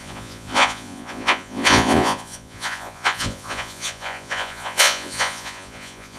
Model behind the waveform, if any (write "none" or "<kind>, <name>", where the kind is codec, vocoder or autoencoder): vocoder, Vocos